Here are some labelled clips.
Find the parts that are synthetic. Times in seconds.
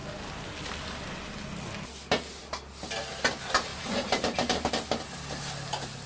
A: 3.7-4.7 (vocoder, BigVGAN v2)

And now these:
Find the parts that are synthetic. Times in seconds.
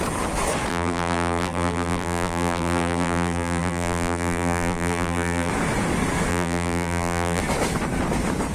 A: 0.7-5.5 (vocoder, BigVGAN v2); 6.3-7.4